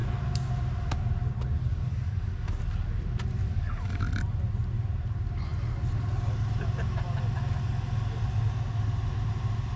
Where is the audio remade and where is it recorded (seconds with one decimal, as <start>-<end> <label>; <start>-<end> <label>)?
0.0-1.7 recorded; 1.7-2.6 remade; 2.6-3.4 recorded; 3.4-4.0 remade; 4.0-9.8 recorded